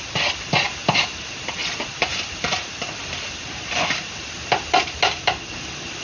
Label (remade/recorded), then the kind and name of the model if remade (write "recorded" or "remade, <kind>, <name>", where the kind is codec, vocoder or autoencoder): recorded